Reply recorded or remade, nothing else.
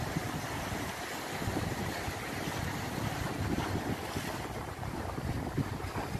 recorded